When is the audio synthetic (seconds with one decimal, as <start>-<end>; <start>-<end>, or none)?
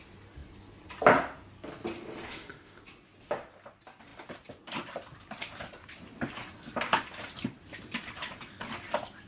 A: 2.3-2.8